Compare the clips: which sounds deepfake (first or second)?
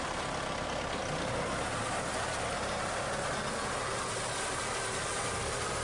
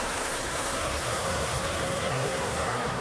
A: second